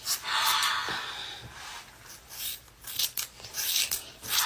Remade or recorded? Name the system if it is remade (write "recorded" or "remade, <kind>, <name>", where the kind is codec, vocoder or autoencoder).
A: recorded